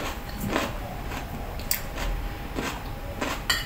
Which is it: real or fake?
real